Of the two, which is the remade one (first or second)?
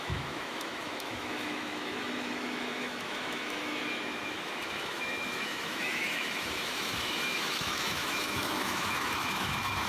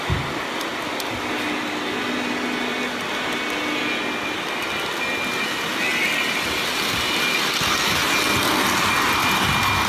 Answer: first